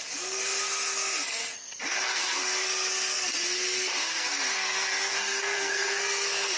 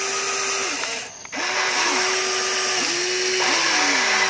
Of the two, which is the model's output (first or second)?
first